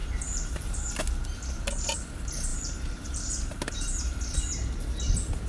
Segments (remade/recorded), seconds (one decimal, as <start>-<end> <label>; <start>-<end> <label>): 0.0-0.9 remade; 0.9-2.5 recorded; 2.5-4.2 remade; 4.2-5.5 recorded